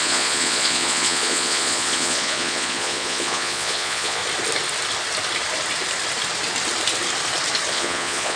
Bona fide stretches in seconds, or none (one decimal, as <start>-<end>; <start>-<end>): 4.2-7.7